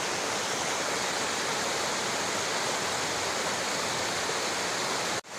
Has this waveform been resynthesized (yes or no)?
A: no